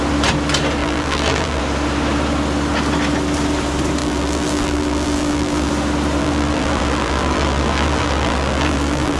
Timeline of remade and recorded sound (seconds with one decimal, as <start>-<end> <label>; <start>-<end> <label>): 0.0-0.8 recorded; 0.8-1.6 remade; 1.6-4.0 recorded; 4.0-5.7 remade; 5.7-6.2 recorded; 6.2-9.2 remade